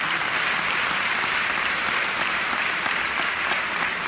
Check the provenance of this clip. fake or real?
real